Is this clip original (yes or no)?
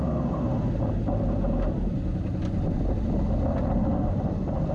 yes